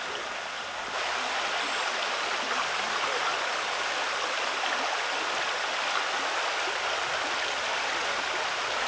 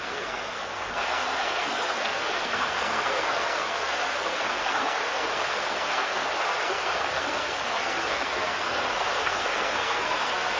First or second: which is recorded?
first